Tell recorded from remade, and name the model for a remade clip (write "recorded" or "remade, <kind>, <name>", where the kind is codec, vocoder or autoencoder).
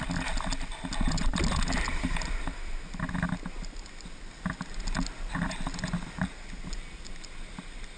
recorded